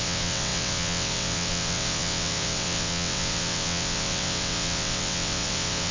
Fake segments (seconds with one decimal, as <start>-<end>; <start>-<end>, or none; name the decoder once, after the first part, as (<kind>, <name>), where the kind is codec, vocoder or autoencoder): 0.0-5.9 (vocoder, WaveNeXt)